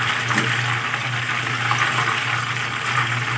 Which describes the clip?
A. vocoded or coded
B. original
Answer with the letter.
B